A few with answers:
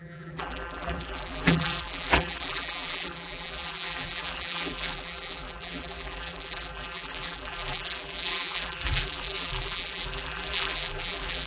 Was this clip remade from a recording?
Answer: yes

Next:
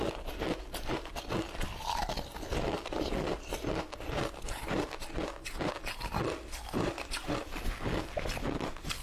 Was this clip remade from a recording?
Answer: no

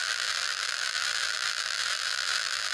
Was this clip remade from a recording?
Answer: yes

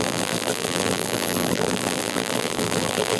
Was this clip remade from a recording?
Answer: yes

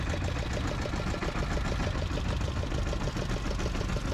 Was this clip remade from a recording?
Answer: no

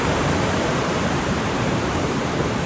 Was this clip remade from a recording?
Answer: yes